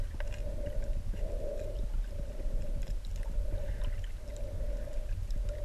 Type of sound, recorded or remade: recorded